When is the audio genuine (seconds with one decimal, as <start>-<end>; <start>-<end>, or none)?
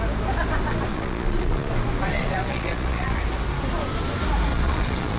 0.0-0.9; 1.7-2.1; 3.2-4.5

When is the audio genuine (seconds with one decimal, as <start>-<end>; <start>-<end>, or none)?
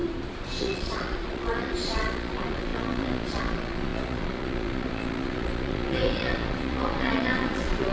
0.0-0.6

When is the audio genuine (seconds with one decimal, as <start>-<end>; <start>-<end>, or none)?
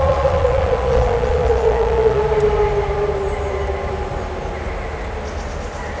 2.2-6.0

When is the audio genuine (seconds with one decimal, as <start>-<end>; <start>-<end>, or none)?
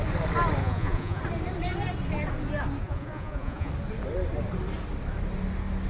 0.0-0.6; 1.2-2.8; 3.7-5.9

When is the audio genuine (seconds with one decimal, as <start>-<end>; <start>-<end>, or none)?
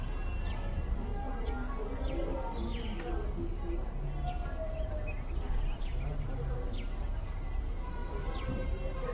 0.0-9.1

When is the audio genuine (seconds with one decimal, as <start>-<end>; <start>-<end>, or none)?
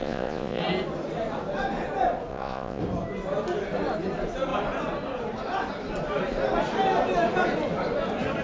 0.6-2.3; 2.8-8.4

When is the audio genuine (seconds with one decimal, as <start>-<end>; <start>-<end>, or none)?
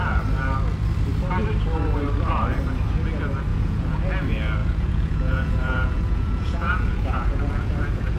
0.0-3.5; 4.0-4.6